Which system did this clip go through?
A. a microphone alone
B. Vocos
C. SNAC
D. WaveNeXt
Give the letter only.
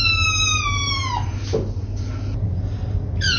A